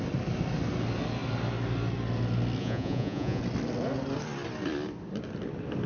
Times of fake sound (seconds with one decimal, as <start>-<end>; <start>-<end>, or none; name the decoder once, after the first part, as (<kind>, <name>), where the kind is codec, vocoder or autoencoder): 2.6-3.4 (vocoder, Vocos)